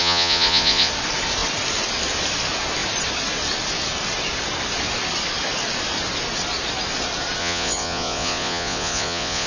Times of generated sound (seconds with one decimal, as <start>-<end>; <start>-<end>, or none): 0.0-0.9; 7.4-9.5